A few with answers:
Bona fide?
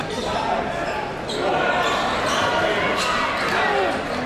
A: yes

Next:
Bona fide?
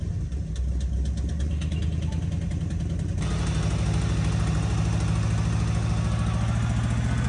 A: yes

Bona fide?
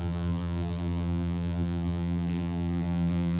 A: no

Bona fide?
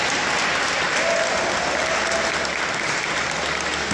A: yes